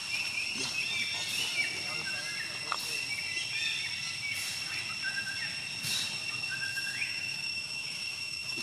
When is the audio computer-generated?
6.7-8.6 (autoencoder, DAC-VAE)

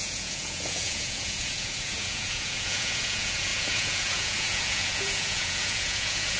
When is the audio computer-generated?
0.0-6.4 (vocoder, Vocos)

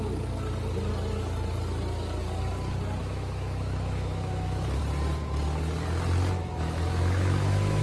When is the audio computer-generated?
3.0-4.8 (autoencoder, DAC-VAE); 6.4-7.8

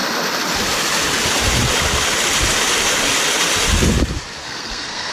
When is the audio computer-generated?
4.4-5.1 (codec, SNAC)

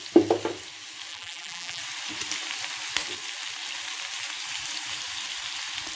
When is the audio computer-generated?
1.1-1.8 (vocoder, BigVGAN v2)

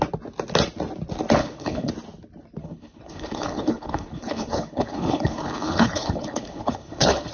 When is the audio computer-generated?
1.4-1.9 (codec, HILCodec); 2.6-7.3

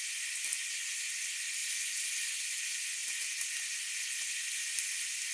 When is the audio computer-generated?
none

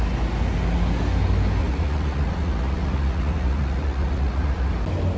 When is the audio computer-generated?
1.6-4.7 (vocoder, Vocos)